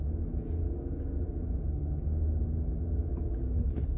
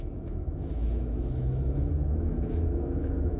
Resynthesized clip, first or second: second